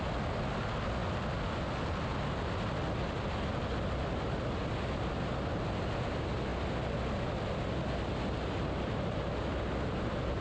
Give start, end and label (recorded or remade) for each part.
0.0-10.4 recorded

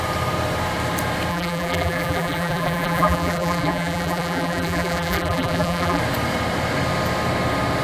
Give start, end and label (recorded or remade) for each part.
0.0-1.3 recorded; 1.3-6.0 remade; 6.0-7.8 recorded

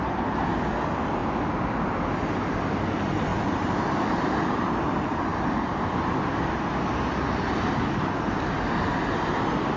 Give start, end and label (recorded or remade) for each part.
0.0-3.3 recorded; 3.3-4.1 remade; 4.1-9.8 recorded

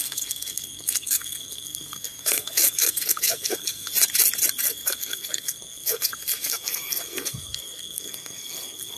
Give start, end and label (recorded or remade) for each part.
0.0-3.9 remade; 3.9-4.6 recorded; 4.6-9.0 remade